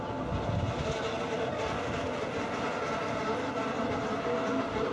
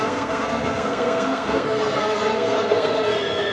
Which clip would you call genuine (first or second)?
first